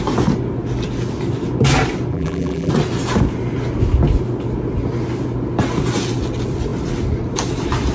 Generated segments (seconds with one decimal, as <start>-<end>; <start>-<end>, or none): 2.1-2.7